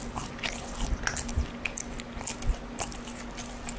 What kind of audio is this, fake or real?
real